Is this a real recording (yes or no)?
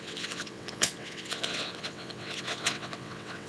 no